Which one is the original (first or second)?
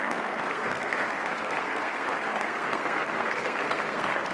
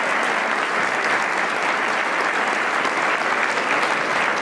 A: second